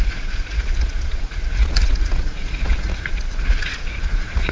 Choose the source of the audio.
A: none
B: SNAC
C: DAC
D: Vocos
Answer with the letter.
D